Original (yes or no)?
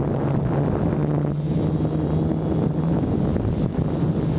yes